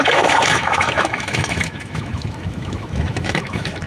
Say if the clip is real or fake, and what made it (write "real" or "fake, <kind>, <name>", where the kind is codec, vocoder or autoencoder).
fake, autoencoder, DAC-VAE